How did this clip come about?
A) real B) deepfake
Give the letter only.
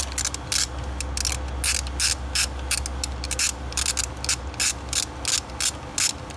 A